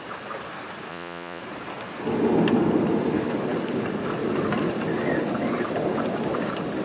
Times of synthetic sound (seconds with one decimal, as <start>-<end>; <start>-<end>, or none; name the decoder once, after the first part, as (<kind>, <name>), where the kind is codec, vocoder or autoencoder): 0.9-1.4 (vocoder, Vocos)